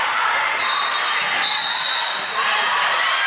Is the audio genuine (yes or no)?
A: yes